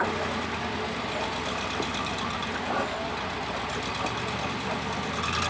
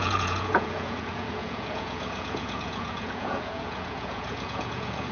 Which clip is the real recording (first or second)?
first